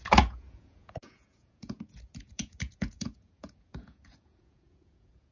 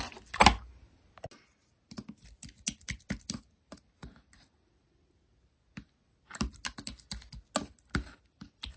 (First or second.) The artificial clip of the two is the first